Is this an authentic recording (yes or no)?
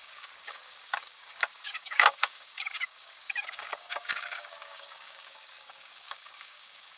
no